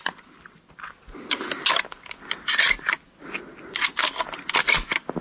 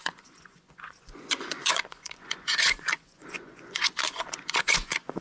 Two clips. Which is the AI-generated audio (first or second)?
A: second